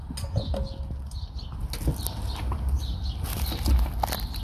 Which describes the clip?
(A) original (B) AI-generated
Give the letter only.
A